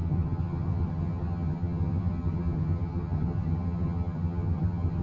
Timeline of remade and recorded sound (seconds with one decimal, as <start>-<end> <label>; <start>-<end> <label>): 0.0-5.0 remade